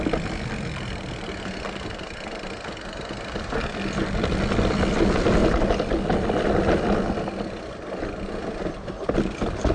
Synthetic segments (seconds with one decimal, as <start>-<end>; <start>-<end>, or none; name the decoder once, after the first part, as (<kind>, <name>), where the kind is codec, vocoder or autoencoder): none